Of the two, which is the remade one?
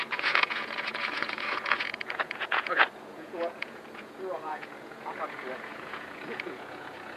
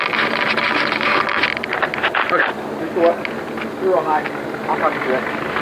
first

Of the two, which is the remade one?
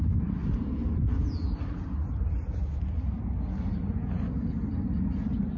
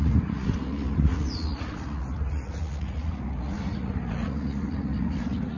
second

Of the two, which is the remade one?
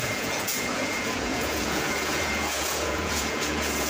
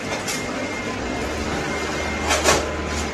first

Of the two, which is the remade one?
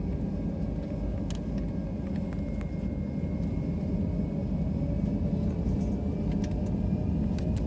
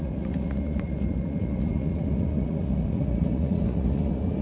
second